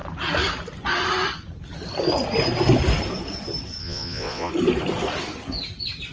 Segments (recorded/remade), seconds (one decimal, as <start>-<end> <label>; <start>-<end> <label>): 0.0-3.8 recorded; 3.8-4.5 remade; 4.5-6.1 recorded